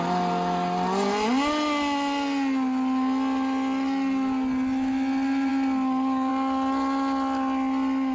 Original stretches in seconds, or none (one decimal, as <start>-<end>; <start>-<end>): 0.0-8.1